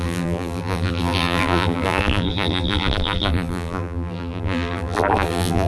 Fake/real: fake